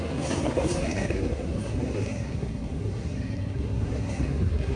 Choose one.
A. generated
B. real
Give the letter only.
A